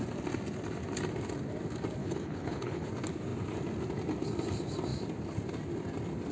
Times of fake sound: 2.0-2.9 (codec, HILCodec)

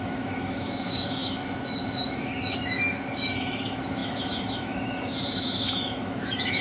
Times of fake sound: 0.0-6.6 (autoencoder, DAC-VAE)

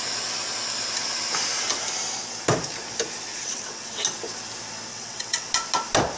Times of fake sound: 3.3-4.0 (vocoder, WaveNeXt); 4.9-5.5